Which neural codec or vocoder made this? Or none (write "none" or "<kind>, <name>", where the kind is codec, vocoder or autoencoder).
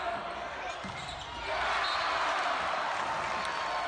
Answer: none